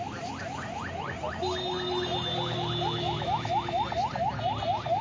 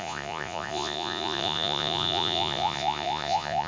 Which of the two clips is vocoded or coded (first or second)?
second